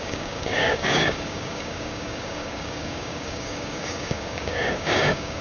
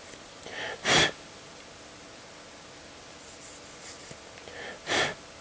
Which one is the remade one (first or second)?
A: first